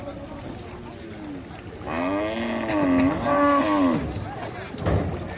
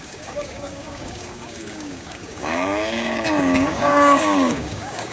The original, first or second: first